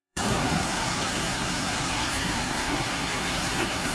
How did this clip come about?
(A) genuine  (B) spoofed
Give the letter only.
B